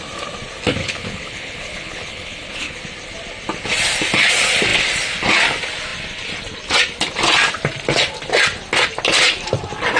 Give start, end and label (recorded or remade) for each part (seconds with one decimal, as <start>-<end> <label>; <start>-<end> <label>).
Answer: 0.0-0.8 recorded; 0.8-2.8 remade; 2.8-10.0 recorded